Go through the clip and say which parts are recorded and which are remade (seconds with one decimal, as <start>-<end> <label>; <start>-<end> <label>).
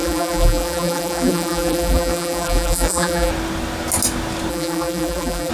0.0-3.3 remade; 3.3-4.5 recorded; 4.5-5.5 remade